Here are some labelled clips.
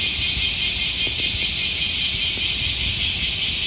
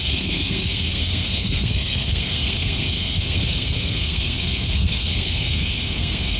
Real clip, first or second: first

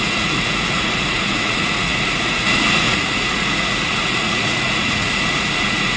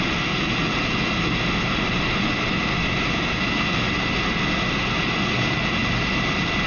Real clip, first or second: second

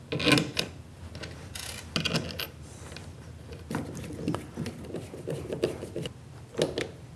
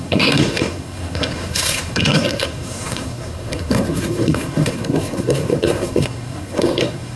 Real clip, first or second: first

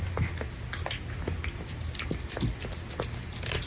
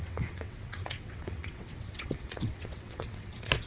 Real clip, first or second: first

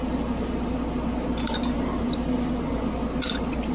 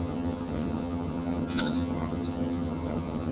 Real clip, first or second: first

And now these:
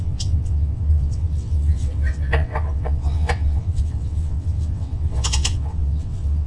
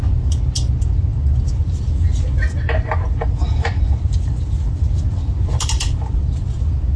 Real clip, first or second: second